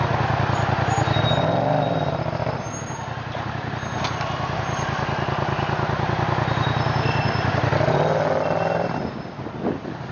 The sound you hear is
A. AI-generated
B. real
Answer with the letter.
B